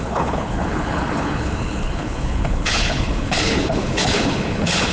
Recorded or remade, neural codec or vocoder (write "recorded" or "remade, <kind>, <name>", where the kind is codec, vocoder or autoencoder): remade, codec, HILCodec